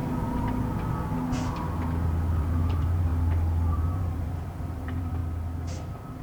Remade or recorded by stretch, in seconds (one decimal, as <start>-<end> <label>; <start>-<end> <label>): 0.0-2.4 recorded; 2.4-3.1 remade; 3.1-3.7 recorded; 3.7-5.2 remade; 5.2-5.7 recorded; 5.7-6.2 remade

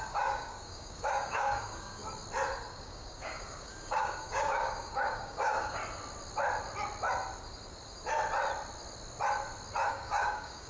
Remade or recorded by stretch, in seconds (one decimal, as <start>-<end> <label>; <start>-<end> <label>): 0.0-2.0 remade; 2.0-2.7 recorded; 2.7-5.8 remade; 5.8-9.9 recorded; 9.9-10.7 remade

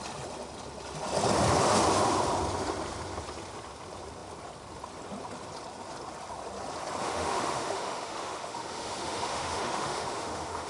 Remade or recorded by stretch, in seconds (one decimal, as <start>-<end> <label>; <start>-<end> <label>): 0.0-7.0 recorded; 7.0-10.7 remade

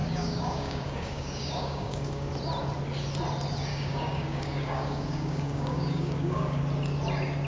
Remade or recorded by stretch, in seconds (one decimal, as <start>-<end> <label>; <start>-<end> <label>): 0.0-2.3 remade; 2.3-3.7 recorded; 3.7-6.6 remade; 6.6-7.5 recorded